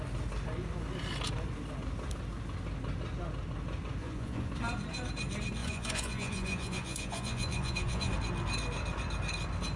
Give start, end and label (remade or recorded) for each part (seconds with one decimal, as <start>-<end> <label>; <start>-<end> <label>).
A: 0.0-4.0 recorded; 4.0-4.5 remade; 4.5-5.6 recorded; 5.6-8.1 remade; 8.1-9.8 recorded